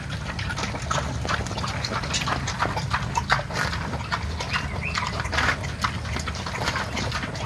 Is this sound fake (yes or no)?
no